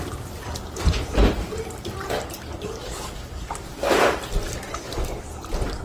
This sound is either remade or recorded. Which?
remade